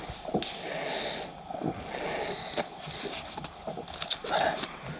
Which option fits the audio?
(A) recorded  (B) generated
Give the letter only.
A